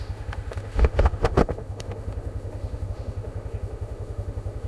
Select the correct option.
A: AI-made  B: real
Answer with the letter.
A